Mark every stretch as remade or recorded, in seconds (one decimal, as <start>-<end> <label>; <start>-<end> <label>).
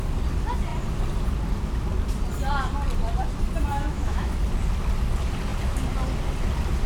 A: 0.0-3.7 recorded; 3.7-4.3 remade; 4.3-6.9 recorded